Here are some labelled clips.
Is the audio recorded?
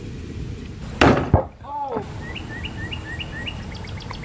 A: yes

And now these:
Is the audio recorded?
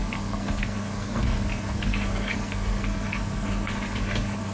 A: no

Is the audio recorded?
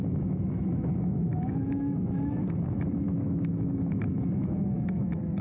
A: no